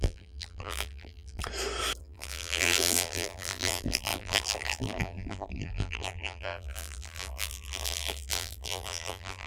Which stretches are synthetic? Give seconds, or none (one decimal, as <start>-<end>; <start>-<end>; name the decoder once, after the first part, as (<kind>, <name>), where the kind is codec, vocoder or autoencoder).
0.0-1.4 (vocoder, BigVGAN v2); 2.0-9.5